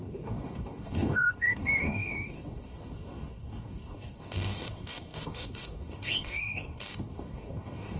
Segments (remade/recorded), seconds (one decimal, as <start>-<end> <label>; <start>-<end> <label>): 0.0-8.0 remade